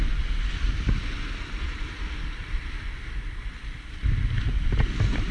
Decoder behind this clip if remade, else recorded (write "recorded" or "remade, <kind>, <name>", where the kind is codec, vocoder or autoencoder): remade, vocoder, BigVGAN v2